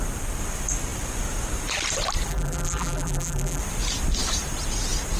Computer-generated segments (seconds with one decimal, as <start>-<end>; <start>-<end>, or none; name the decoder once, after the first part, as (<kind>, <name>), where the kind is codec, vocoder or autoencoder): 2.3-3.6 (vocoder, BigVGAN v2)